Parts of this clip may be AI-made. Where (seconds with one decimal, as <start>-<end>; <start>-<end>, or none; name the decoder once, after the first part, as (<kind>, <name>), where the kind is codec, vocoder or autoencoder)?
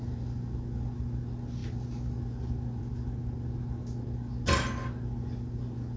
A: none